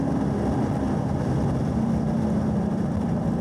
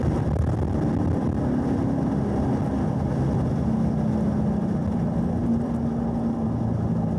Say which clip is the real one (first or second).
second